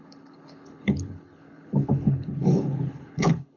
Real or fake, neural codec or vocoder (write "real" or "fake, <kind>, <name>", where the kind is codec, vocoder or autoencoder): fake, codec, HILCodec